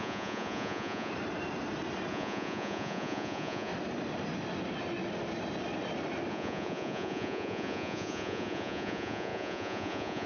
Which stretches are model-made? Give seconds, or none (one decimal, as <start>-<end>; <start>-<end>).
0.0-1.1; 2.1-3.7; 6.3-10.3